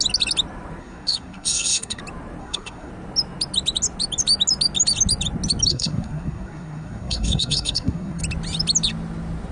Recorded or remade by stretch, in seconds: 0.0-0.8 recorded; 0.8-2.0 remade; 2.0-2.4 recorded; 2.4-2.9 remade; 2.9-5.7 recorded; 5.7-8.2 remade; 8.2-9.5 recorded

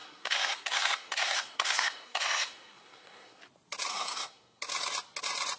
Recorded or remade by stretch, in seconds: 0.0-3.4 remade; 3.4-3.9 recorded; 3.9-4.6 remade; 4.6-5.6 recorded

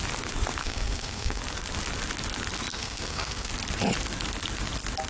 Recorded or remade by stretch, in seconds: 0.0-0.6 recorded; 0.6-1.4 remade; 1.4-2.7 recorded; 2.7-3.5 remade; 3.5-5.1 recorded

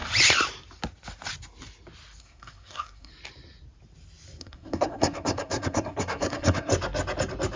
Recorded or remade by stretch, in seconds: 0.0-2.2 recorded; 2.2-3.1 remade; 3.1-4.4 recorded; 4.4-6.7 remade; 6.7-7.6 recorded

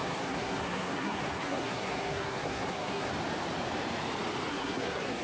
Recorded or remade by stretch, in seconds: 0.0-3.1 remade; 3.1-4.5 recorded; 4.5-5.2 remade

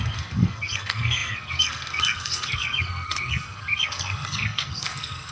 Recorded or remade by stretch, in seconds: 0.0-5.3 remade

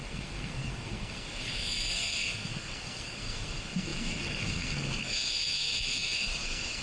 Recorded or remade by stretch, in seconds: 0.0-6.8 remade